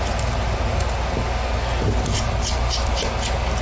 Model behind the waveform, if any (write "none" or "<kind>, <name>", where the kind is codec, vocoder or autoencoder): none